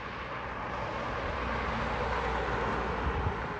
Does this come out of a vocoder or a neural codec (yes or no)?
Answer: no